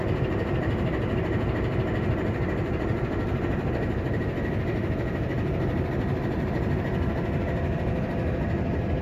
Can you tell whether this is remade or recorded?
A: recorded